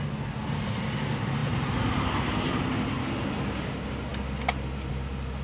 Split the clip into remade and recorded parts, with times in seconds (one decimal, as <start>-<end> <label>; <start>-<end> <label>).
0.0-1.4 recorded; 1.4-2.6 remade; 2.6-5.4 recorded